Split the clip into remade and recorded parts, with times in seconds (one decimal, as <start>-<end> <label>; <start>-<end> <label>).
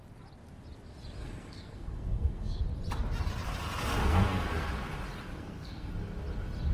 0.0-1.2 recorded; 1.2-2.6 remade; 2.6-4.0 recorded; 4.0-4.7 remade; 4.7-5.3 recorded; 5.3-5.9 remade; 5.9-6.7 recorded